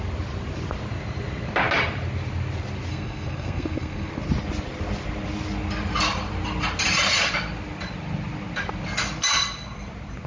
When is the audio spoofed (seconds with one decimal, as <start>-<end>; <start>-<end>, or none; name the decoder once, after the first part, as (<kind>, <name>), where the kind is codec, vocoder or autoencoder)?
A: 2.9-4.1 (codec, SNAC)